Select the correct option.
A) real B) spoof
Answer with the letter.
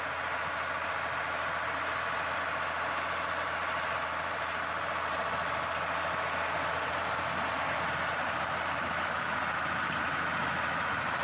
A